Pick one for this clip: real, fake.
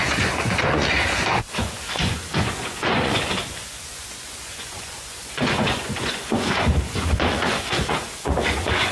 fake